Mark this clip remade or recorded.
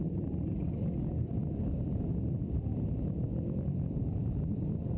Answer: remade